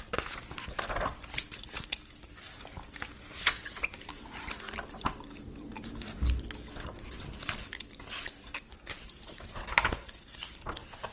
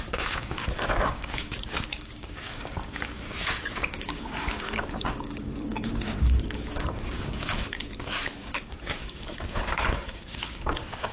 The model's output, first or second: second